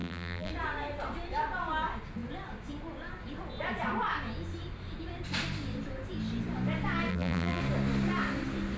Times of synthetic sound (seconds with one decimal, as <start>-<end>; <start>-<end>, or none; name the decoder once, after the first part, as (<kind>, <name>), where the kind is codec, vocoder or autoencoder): 0.0-0.5 (vocoder, BigVGAN v2); 7.1-7.6